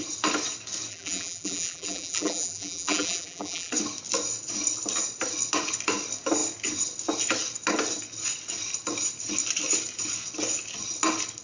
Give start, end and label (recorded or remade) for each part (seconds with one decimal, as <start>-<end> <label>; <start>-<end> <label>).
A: 0.0-0.9 recorded; 0.9-3.7 remade; 3.7-11.4 recorded